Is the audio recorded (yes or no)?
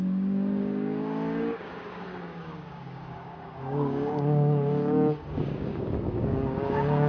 no